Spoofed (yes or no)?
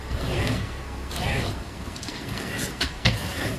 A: yes